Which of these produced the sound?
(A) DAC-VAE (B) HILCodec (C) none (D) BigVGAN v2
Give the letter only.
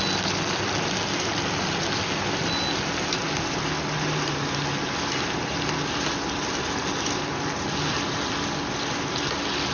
C